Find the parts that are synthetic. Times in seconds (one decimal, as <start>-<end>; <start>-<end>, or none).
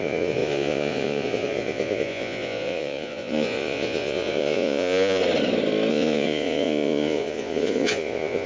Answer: 0.0-5.2; 5.9-8.5